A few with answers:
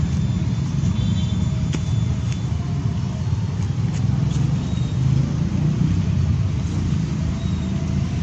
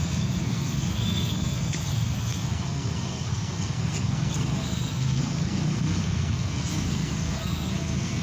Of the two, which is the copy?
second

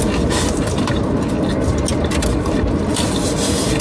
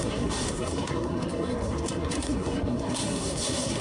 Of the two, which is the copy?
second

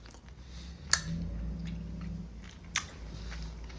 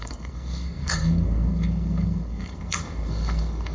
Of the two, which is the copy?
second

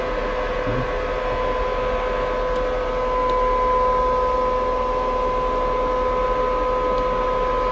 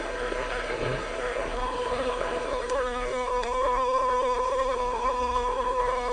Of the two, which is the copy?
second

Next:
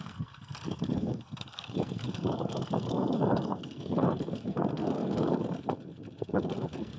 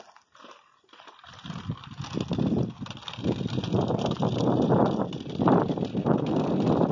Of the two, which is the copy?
first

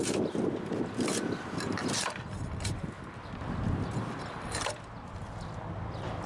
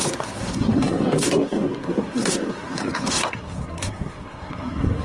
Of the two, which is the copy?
second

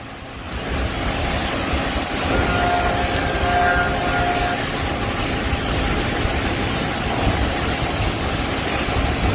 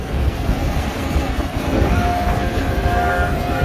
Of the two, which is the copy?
second